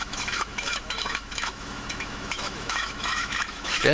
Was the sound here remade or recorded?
remade